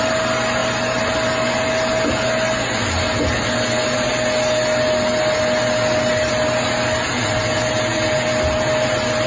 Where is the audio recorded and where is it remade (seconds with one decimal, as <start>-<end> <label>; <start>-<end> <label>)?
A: 0.0-9.3 recorded

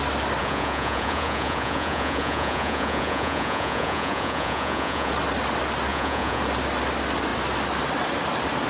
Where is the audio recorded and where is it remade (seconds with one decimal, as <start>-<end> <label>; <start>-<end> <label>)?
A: 0.0-0.4 recorded; 0.4-5.1 remade; 5.1-5.9 recorded; 5.9-6.4 remade; 6.4-8.7 recorded

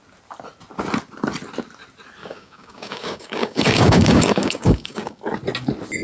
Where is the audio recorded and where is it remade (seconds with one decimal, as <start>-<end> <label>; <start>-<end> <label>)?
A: 0.0-2.2 recorded; 2.2-5.2 remade; 5.2-6.0 recorded

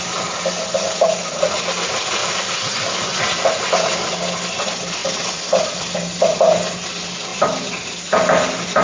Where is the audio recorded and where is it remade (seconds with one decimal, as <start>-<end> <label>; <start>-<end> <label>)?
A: 0.0-2.2 recorded; 2.2-2.8 remade; 2.8-5.0 recorded; 5.0-5.8 remade; 5.8-8.8 recorded

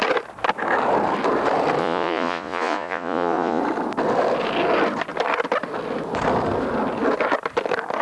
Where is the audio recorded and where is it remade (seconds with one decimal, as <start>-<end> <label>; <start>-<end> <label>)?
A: 0.0-1.8 recorded; 1.8-3.6 remade; 3.6-8.0 recorded

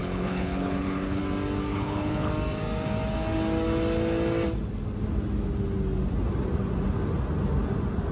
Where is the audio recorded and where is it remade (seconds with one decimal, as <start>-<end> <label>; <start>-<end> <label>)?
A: 0.0-1.2 remade; 1.2-1.7 recorded; 1.7-2.3 remade; 2.3-8.1 recorded

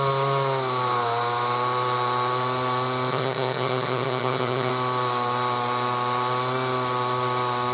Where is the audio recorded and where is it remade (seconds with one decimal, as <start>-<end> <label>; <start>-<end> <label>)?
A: 0.0-3.1 recorded; 3.1-4.7 remade; 4.7-7.7 recorded

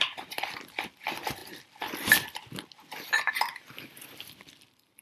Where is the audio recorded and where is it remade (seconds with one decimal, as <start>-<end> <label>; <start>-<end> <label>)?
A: 0.0-1.4 remade; 1.4-3.3 recorded; 3.3-5.0 remade